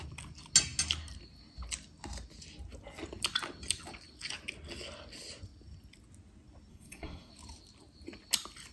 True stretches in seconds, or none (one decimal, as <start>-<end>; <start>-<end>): 0.0-6.7; 7.3-8.7